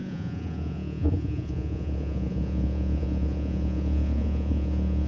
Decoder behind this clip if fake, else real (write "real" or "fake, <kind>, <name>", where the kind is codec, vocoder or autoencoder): fake, vocoder, Vocos